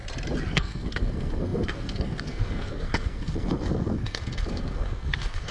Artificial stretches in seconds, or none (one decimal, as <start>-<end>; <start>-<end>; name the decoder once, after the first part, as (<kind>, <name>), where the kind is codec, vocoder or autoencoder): 0.5-5.5 (codec, SNAC)